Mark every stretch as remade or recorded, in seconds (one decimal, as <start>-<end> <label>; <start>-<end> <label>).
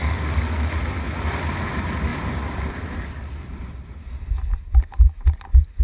0.0-0.7 remade; 0.7-5.8 recorded